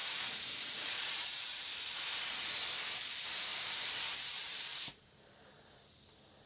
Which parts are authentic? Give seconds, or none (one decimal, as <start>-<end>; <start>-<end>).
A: 1.7-3.5; 6.1-6.5